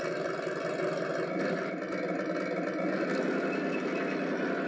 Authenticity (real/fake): real